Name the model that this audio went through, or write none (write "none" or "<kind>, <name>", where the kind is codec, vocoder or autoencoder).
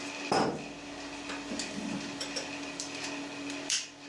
none